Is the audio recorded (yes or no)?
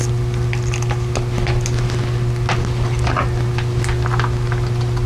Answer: yes